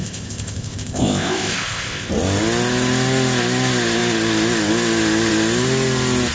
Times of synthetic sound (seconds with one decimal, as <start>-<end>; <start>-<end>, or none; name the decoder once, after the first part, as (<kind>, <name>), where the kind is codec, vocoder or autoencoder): 0.0-2.1 (codec, ZipCodec)